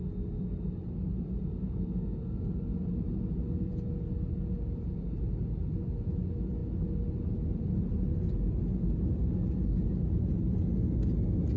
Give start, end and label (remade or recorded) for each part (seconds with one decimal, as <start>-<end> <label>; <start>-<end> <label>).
0.0-11.6 recorded